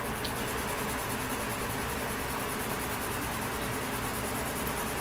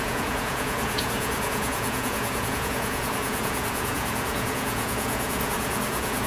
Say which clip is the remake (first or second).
second